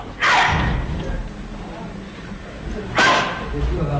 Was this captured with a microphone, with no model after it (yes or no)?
yes